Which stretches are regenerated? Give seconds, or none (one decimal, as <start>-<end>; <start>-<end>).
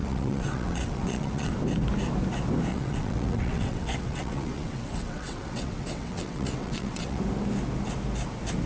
0.0-1.5; 2.7-7.2